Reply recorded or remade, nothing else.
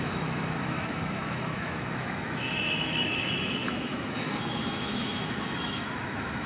remade